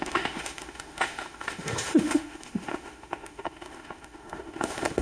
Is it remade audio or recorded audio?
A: remade